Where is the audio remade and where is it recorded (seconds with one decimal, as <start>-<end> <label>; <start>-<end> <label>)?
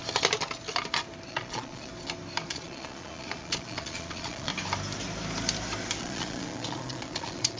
0.0-1.3 recorded; 1.3-1.9 remade; 1.9-2.5 recorded; 2.5-4.5 remade; 4.5-6.0 recorded; 6.0-7.6 remade